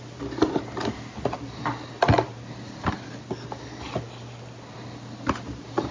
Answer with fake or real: real